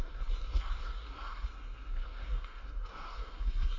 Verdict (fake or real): fake